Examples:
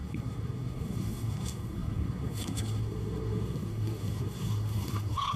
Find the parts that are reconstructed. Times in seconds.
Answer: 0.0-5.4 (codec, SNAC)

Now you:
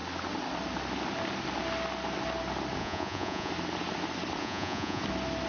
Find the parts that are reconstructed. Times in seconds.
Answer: 2.8-3.5 (vocoder, Vocos); 4.4-5.0

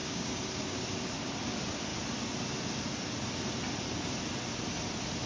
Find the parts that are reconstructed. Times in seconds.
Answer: 0.0-0.8 (codec, DAC)

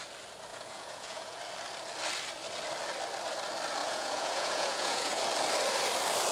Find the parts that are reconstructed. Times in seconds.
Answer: 0.5-1.4 (vocoder, Vocos); 3.8-5.2

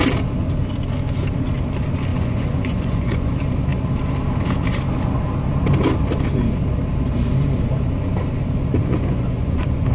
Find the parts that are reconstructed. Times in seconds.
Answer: 2.1-3.3 (vocoder, Vocos); 8.8-9.9

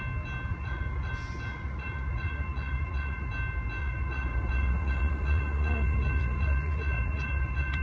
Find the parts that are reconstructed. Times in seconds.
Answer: 0.5-1.1 (vocoder, Vocos); 1.5-3.3; 3.8-7.8

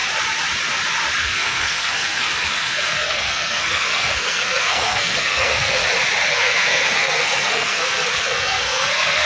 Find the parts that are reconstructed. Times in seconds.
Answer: 1.2-5.8 (codec, SNAC); 6.3-9.3